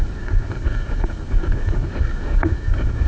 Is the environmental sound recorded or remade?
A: remade